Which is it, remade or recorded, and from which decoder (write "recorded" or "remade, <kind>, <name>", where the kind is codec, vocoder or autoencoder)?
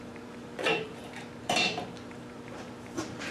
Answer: remade, vocoder, BigVGAN v2